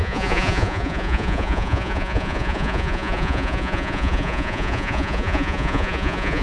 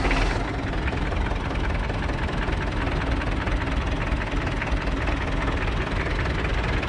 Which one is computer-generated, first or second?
first